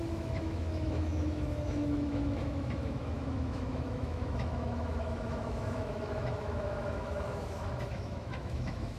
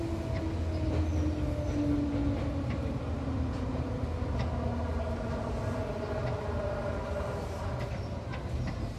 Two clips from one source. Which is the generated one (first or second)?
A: first